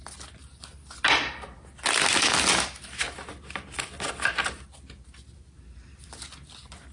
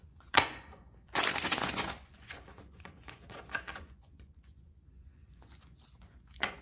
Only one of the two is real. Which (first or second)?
first